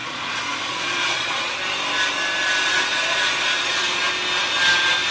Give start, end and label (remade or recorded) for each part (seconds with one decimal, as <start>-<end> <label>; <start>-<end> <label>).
0.0-1.5 remade; 1.5-2.7 recorded; 2.7-4.0 remade; 4.0-5.1 recorded